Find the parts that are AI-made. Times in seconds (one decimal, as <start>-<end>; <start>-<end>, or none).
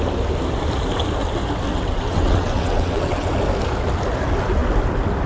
1.7-3.3